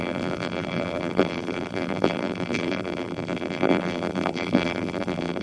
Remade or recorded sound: remade